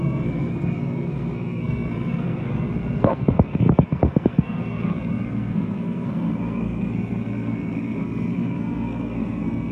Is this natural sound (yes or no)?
no